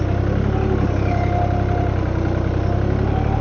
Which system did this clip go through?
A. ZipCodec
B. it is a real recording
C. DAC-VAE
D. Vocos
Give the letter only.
B